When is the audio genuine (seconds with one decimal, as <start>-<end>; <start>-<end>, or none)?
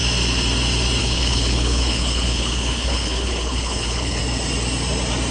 0.0-1.0; 4.2-5.3